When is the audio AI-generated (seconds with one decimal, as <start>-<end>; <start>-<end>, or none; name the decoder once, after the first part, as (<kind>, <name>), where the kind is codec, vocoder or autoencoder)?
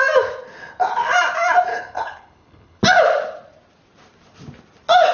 1.7-2.8 (codec, HILCodec)